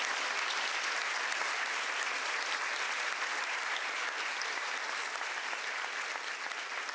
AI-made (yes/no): no